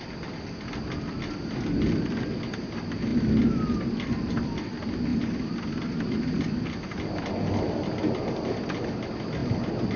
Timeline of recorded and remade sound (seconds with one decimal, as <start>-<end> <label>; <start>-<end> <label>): 0.0-10.0 recorded